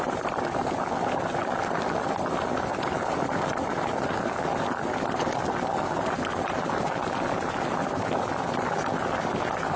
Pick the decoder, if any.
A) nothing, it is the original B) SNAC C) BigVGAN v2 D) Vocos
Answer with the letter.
A